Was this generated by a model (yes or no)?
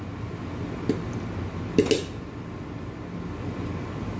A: no